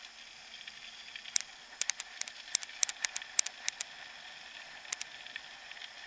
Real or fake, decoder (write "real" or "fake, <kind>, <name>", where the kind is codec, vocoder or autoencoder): real